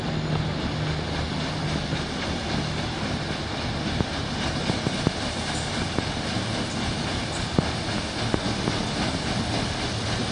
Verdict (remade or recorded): recorded